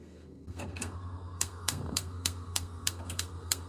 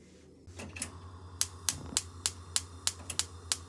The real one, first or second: second